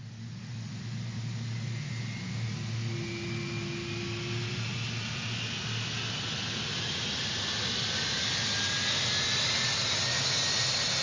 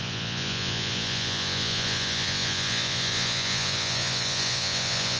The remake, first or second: second